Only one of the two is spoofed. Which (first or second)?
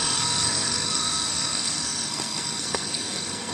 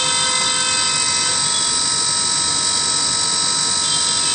first